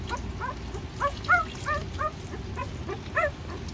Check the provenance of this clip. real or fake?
real